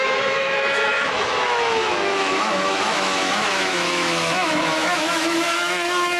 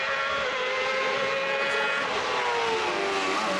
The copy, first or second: first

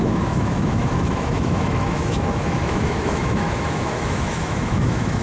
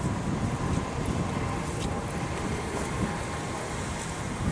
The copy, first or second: first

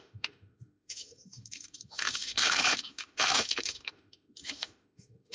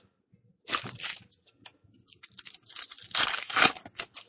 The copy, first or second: first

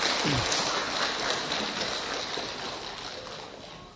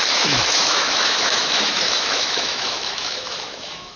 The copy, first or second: second